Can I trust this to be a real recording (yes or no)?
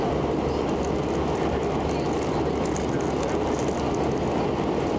yes